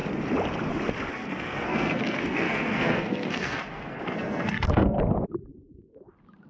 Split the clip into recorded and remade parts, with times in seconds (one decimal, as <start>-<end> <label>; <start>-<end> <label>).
0.0-1.1 recorded; 1.1-5.0 remade; 5.0-6.5 recorded